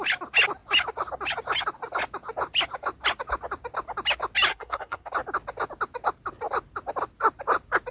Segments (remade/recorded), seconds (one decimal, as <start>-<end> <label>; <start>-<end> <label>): 0.0-4.5 recorded; 4.5-5.1 remade; 5.1-7.9 recorded